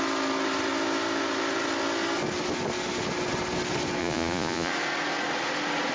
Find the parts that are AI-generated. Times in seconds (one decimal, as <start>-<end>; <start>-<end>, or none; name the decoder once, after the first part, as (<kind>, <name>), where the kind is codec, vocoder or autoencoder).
4.0-4.7 (vocoder, Vocos)